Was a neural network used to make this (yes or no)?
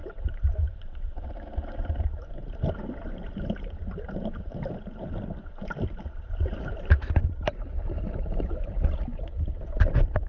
yes